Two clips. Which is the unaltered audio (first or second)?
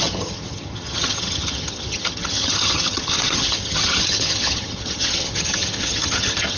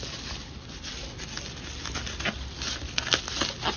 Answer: second